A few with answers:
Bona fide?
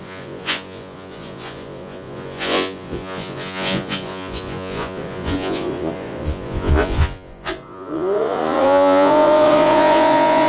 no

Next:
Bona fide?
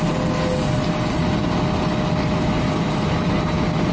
yes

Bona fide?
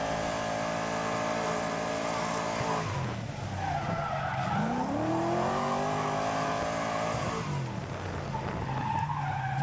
yes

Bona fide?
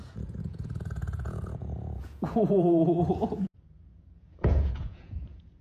no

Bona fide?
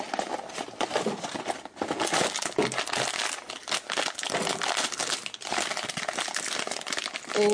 yes